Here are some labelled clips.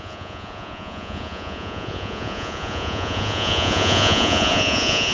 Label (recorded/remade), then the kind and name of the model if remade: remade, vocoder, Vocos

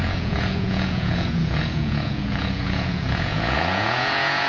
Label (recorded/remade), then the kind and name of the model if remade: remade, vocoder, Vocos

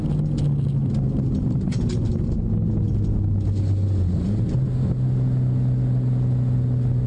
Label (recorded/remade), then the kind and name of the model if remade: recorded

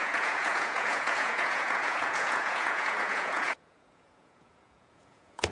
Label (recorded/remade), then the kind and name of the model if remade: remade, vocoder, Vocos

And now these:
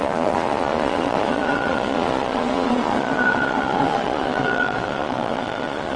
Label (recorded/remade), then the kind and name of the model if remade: remade, vocoder, Vocos